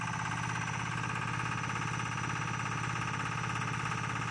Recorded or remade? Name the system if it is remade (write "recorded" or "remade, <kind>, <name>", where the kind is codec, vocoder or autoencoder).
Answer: recorded